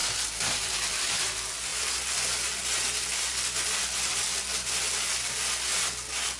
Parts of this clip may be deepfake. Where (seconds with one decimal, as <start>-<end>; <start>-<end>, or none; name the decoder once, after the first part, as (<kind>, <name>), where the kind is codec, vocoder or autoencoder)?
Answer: none